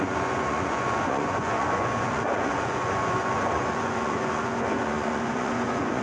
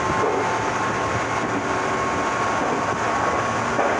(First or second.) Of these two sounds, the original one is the second